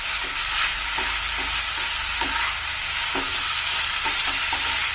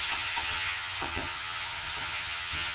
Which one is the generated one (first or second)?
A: second